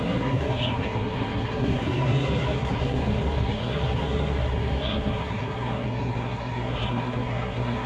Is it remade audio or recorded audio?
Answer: remade